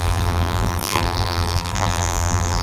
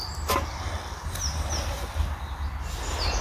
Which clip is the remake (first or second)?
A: first